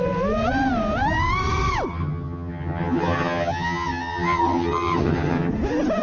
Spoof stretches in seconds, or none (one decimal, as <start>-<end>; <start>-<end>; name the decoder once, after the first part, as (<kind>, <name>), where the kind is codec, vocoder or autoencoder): 1.9-5.5 (vocoder, HiFi-GAN)